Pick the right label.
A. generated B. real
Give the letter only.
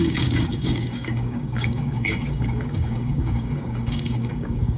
A